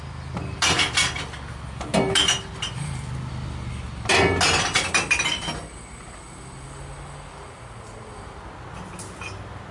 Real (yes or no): yes